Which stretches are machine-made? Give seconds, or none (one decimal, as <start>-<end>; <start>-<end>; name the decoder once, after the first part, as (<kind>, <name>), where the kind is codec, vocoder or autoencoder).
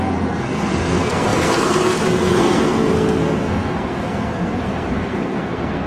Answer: 0.0-5.9 (codec, SNAC)